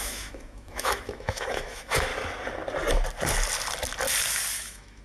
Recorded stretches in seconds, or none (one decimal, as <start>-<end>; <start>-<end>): 2.1-4.5